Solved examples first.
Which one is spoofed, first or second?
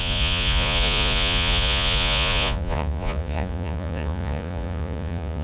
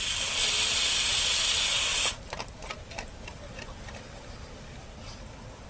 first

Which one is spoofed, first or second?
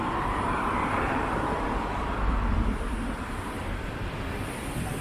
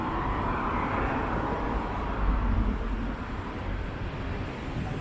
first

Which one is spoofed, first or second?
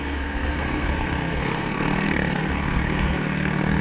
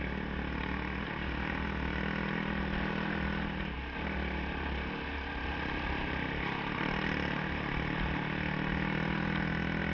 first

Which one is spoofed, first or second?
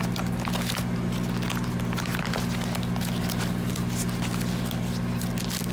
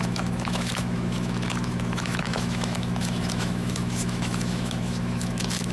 second